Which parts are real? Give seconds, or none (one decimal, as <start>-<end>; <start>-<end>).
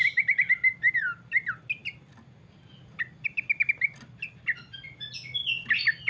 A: 0.0-6.1